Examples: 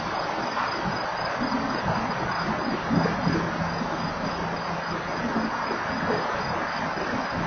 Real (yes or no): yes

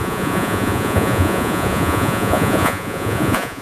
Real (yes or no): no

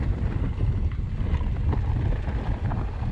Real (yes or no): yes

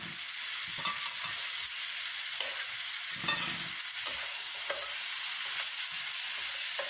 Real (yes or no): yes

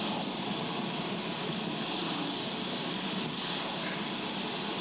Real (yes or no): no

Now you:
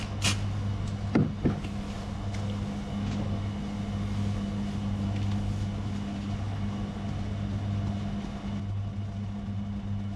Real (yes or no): yes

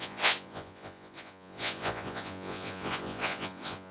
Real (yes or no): no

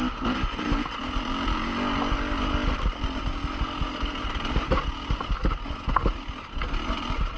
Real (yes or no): yes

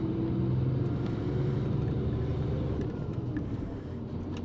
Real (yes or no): yes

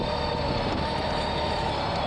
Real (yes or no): yes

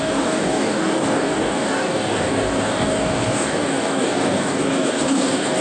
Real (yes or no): no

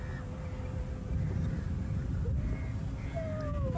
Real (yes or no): yes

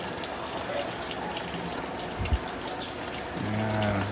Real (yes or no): yes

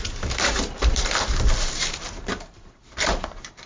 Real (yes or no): no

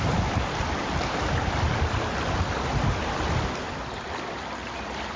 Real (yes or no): yes